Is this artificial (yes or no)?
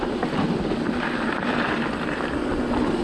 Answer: no